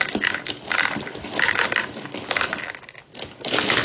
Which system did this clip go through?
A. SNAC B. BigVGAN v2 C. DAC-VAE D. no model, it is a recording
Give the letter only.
D